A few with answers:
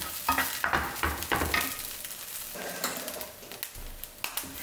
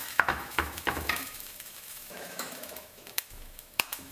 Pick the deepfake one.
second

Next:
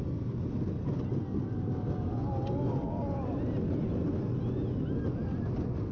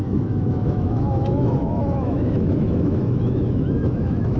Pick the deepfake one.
second